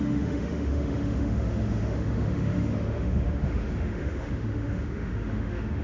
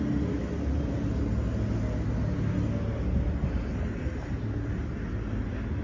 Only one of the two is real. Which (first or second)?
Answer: second